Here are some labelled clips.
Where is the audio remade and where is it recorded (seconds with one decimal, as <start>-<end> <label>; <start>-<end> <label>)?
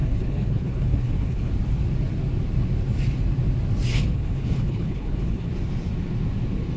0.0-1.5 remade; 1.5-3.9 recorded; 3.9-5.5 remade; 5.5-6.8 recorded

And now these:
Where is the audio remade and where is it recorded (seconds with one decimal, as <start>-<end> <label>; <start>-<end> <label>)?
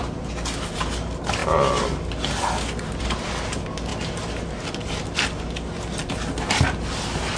0.0-7.4 recorded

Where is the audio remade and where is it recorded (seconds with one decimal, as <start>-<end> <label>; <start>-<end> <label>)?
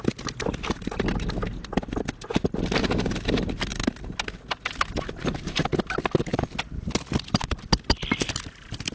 0.0-8.9 recorded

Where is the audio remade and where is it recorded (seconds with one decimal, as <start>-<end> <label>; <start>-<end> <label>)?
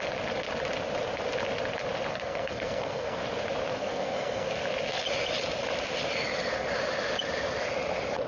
0.0-2.1 recorded; 2.1-3.2 remade; 3.2-3.7 recorded; 3.7-4.5 remade; 4.5-8.3 recorded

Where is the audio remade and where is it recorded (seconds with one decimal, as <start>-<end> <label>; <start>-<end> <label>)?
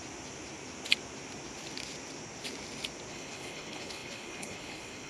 0.0-3.1 recorded; 3.1-5.1 remade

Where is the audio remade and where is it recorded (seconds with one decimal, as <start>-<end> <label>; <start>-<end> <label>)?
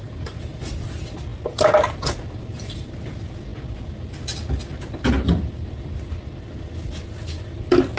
0.0-8.0 recorded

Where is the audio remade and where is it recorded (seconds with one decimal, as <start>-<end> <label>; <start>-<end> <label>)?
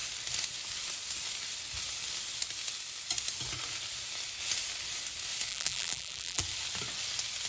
0.0-5.5 recorded; 5.5-6.4 remade; 6.4-7.5 recorded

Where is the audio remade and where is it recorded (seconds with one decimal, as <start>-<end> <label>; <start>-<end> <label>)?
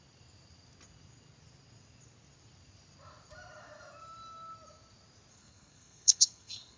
0.0-5.3 recorded; 5.3-6.8 remade